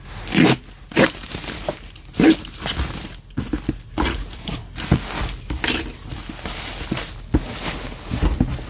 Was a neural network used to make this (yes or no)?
no